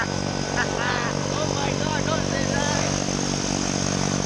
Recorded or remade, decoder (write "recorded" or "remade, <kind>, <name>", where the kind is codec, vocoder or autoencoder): recorded